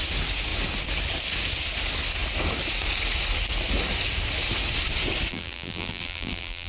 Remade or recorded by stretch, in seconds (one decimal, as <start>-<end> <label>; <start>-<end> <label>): 0.0-5.3 recorded; 5.3-6.7 remade